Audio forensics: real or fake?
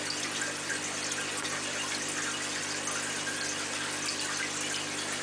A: real